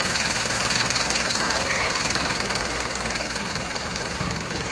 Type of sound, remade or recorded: remade